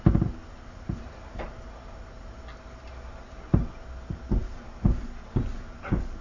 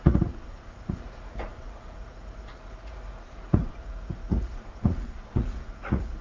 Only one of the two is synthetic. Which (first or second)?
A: second